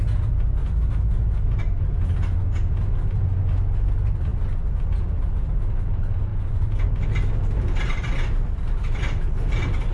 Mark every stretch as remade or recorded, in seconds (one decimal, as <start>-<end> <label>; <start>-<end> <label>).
0.0-6.3 recorded; 6.3-6.9 remade; 6.9-9.9 recorded